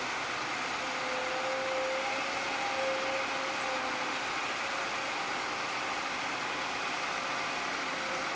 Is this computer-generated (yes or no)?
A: no